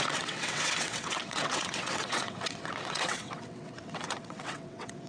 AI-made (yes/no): yes